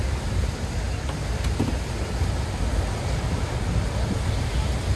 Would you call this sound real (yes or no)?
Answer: yes